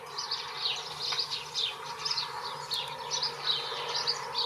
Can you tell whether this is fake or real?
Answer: real